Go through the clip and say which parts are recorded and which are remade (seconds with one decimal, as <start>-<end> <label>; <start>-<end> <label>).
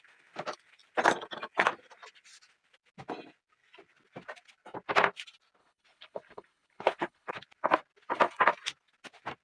0.0-5.6 recorded; 5.6-7.3 remade; 7.3-9.4 recorded